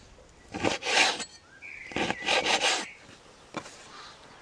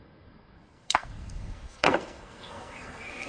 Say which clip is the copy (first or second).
second